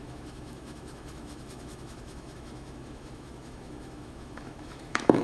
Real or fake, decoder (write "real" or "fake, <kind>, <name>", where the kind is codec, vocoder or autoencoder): fake, autoencoder, DAC-VAE